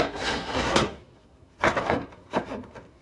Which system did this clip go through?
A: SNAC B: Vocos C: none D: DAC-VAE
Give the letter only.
A